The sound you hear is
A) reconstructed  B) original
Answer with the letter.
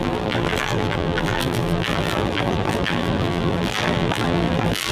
A